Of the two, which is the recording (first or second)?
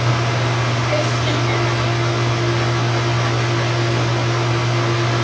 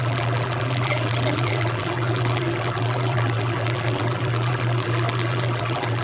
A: first